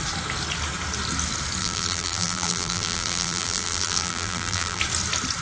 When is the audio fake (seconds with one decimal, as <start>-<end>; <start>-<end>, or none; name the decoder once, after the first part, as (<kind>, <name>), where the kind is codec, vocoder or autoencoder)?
1.6-4.8 (vocoder, BigVGAN v2)